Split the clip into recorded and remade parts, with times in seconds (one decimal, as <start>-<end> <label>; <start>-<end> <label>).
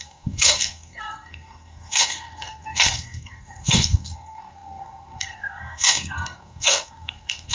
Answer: 0.0-7.5 remade